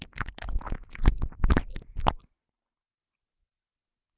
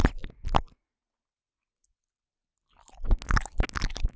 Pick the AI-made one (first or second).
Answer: first